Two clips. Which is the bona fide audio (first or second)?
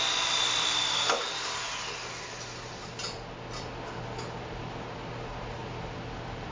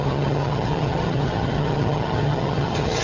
first